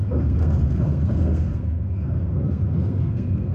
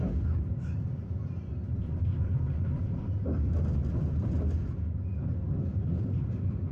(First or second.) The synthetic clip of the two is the first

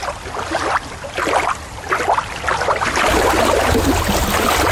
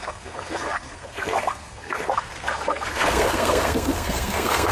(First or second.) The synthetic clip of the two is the second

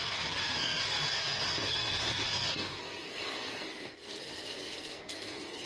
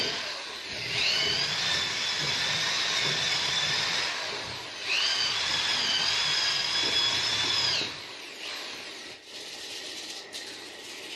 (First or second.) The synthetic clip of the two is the first